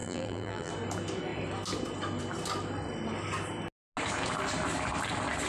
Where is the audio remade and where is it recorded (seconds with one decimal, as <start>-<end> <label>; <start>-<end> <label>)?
0.0-0.7 remade; 0.7-5.5 recorded